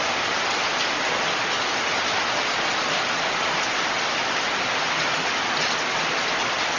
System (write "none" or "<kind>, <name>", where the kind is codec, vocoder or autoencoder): none